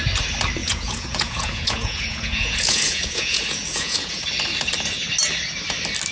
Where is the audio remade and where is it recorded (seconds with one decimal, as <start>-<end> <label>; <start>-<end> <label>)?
0.0-0.6 recorded; 0.6-4.3 remade; 4.3-6.1 recorded